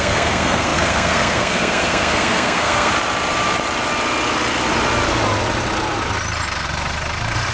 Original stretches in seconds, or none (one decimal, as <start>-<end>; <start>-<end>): 2.9-7.5